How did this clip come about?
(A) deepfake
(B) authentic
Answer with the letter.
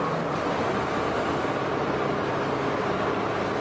B